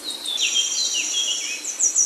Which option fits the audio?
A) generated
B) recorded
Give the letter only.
B